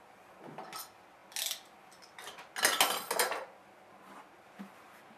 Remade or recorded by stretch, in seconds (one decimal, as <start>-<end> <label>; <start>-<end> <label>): 0.0-5.2 recorded